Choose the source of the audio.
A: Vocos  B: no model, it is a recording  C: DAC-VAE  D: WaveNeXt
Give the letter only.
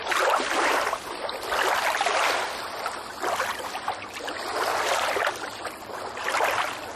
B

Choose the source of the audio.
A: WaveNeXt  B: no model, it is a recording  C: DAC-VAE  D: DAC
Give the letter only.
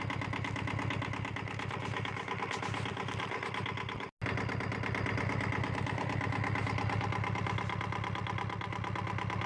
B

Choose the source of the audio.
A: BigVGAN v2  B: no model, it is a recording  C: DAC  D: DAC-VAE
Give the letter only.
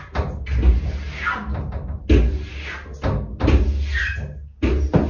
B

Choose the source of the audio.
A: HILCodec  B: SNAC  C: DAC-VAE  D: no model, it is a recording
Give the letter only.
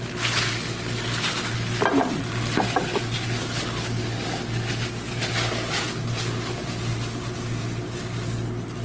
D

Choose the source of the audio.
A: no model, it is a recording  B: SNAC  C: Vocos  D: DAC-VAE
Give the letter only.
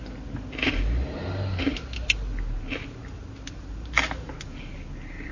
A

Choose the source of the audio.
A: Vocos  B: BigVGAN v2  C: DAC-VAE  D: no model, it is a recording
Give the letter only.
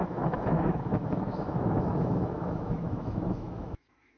C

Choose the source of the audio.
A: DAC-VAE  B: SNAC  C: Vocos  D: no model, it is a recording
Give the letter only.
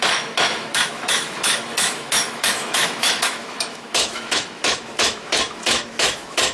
A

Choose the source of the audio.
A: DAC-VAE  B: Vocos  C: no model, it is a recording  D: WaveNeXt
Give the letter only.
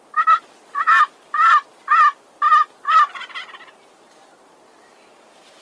C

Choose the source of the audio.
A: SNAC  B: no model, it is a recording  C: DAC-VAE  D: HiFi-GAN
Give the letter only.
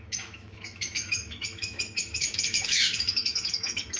C